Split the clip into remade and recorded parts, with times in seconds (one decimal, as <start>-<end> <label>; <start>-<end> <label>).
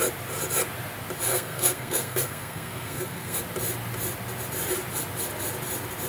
0.0-1.3 recorded; 1.3-3.4 remade; 3.4-6.1 recorded